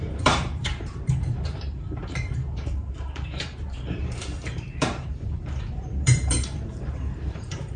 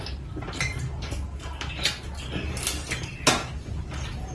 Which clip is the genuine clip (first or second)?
second